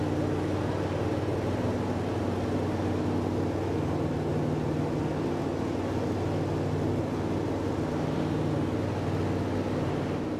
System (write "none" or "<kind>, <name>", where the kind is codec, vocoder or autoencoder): none